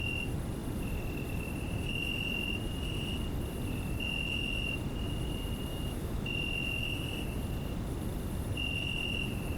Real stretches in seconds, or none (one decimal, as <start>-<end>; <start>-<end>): 0.0-5.7; 6.3-9.6